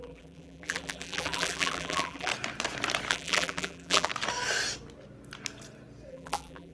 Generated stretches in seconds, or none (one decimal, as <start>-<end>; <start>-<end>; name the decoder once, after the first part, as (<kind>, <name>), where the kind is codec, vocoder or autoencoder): 0.0-2.3 (vocoder, BigVGAN v2); 3.1-4.1; 6.1-6.7